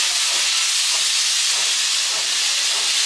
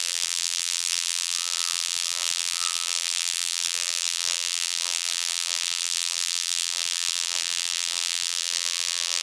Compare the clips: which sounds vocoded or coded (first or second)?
second